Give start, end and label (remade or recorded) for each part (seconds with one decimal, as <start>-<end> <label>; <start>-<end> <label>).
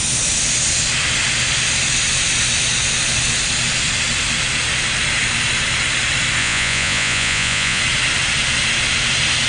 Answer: 0.0-6.4 recorded; 6.4-7.8 remade; 7.8-9.5 recorded